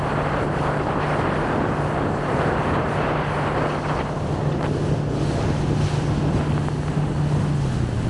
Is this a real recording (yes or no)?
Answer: yes